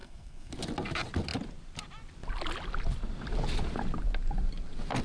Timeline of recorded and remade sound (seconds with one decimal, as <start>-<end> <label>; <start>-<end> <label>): 0.0-0.5 remade; 0.5-5.0 recorded